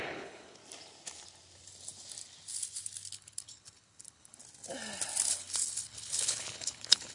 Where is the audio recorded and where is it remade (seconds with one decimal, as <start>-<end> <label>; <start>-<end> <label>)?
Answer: 0.0-0.6 remade; 0.6-3.1 recorded; 3.1-4.4 remade; 4.4-5.3 recorded; 5.3-7.1 remade